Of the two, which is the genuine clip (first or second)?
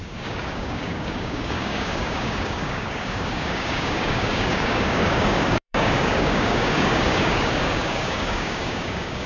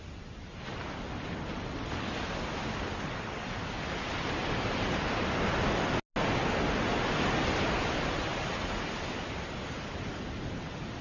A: second